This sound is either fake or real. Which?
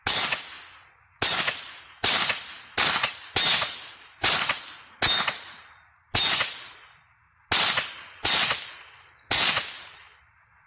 real